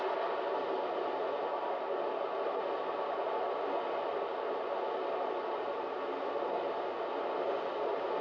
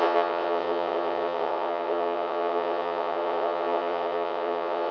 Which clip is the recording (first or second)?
first